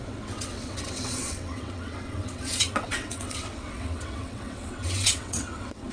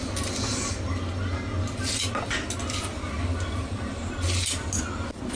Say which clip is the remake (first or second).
first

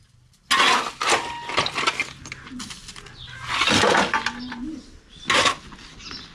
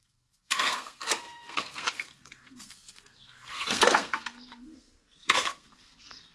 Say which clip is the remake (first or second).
second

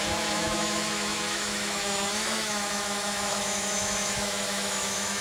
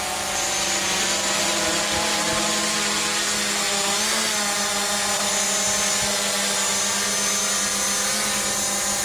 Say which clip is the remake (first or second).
first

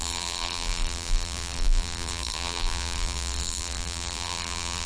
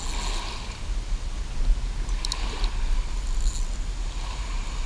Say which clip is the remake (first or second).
first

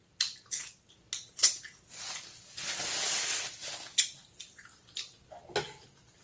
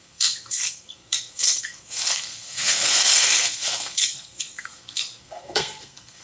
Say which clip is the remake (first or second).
second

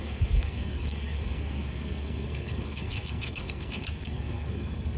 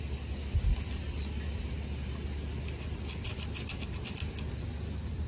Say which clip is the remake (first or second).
first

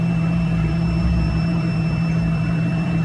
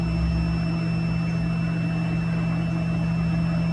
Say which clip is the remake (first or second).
first